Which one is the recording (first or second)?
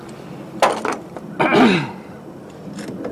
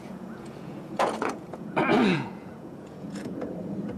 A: first